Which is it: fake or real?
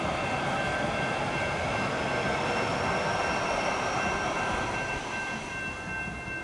real